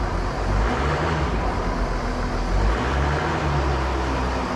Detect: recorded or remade recorded